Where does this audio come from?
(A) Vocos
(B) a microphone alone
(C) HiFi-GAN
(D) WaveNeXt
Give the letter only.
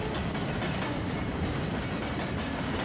B